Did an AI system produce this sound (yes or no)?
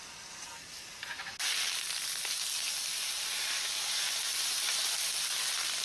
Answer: no